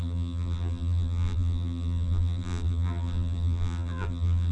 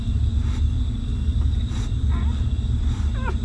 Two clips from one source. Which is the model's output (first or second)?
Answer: first